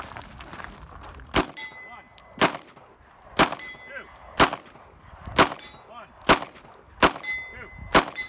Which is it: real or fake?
real